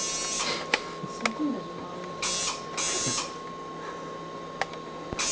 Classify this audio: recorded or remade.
recorded